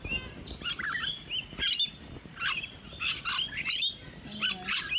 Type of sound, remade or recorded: recorded